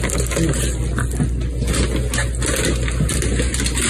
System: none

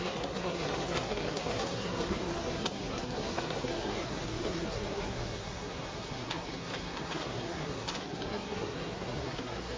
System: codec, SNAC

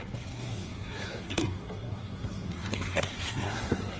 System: codec, SNAC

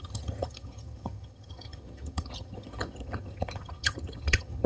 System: vocoder, HiFi-GAN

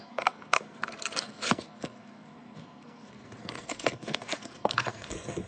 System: codec, SNAC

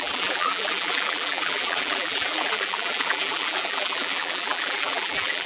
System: vocoder, BigVGAN v2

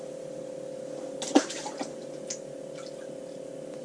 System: none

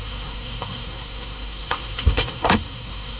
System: codec, SNAC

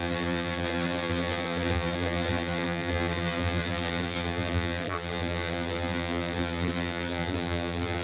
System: vocoder, BigVGAN v2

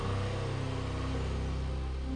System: none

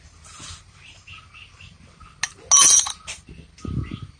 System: none